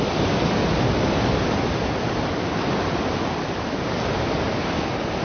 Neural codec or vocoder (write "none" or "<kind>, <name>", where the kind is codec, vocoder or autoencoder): none